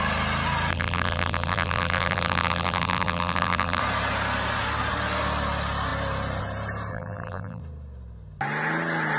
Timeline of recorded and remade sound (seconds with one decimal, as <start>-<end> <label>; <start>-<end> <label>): 0.0-0.7 recorded; 0.7-3.8 remade; 3.8-6.9 recorded; 6.9-7.6 remade; 7.6-9.2 recorded